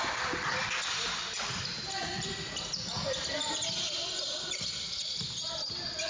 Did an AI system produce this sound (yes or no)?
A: no